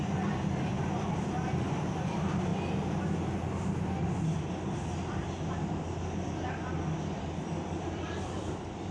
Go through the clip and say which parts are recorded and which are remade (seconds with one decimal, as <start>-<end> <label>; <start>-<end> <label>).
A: 0.0-2.5 remade; 2.5-7.2 recorded; 7.2-8.9 remade